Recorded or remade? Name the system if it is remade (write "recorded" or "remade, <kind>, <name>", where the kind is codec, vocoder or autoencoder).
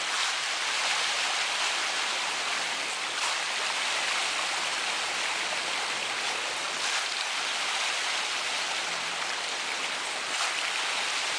recorded